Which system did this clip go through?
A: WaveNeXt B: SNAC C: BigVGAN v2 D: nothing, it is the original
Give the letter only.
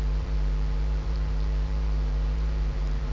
C